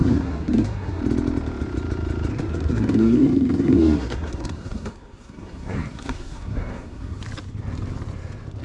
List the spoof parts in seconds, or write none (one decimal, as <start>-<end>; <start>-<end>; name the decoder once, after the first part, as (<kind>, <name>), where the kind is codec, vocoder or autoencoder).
0.0-1.0 (codec, SNAC); 2.3-7.2

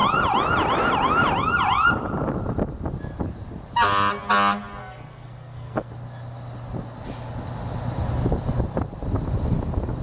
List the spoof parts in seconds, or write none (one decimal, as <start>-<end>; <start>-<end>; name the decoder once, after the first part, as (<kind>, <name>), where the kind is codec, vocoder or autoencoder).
4.8-5.9 (codec, SNAC)

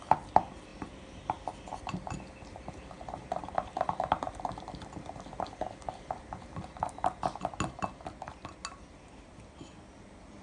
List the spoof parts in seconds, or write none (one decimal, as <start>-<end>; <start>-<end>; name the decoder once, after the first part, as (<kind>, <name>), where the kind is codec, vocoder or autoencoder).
none

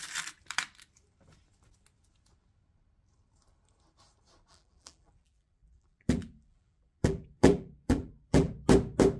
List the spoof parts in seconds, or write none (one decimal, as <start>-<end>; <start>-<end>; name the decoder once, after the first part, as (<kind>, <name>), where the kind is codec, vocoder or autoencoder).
4.5-8.5 (vocoder, BigVGAN v2)

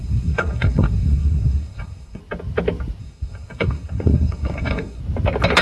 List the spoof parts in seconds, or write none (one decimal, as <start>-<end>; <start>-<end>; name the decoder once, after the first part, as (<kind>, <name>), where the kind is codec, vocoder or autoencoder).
0.0-2.2 (codec, SNAC); 3.0-5.0

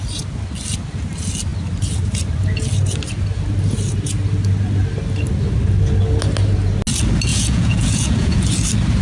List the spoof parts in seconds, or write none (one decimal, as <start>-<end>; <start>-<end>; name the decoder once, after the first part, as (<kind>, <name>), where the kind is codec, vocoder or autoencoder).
7.3-8.4 (vocoder, Vocos)